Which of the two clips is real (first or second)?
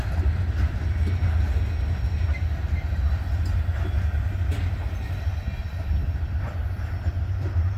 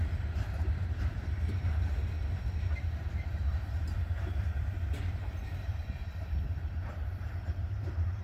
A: first